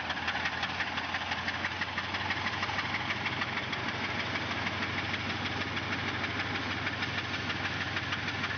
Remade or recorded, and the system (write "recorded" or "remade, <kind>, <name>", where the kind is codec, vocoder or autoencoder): recorded